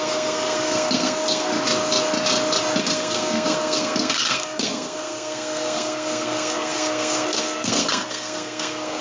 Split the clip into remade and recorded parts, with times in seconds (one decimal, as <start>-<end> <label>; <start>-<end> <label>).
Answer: 0.0-1.5 remade; 1.5-2.8 recorded; 2.8-9.0 remade